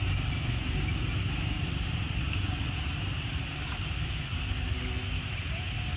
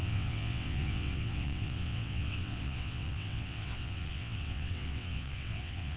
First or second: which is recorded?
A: first